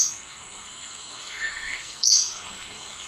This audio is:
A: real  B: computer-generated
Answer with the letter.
B